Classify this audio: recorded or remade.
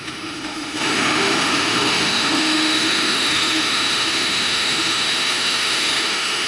remade